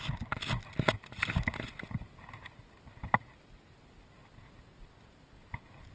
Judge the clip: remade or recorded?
recorded